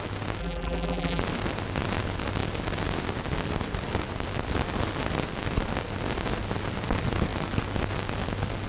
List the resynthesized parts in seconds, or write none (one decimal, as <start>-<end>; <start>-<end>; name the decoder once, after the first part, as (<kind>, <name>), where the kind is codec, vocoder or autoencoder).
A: 0.4-1.2 (vocoder, BigVGAN v2)